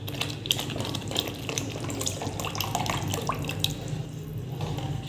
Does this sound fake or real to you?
real